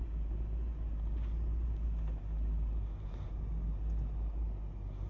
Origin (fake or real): real